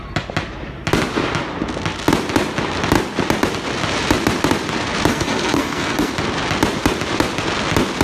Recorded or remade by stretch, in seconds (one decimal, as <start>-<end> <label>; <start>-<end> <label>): 0.0-5.1 recorded; 5.1-6.1 remade; 6.1-8.0 recorded